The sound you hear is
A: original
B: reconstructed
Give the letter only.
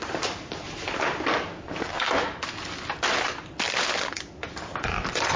A